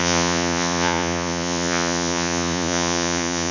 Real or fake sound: fake